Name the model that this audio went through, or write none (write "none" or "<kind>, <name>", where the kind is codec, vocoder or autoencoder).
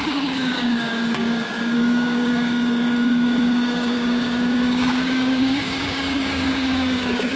codec, DAC